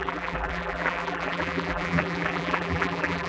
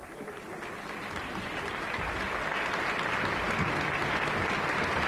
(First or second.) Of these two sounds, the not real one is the first